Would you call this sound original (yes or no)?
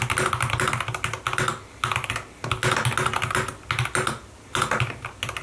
yes